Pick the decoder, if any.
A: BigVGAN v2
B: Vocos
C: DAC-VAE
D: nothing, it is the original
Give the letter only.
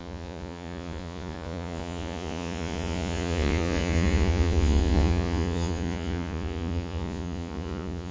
B